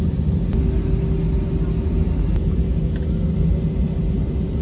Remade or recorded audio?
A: recorded